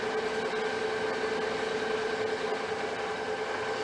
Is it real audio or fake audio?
real